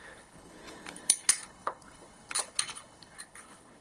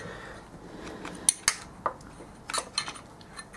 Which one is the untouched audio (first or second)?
second